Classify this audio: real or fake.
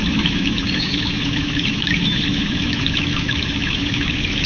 fake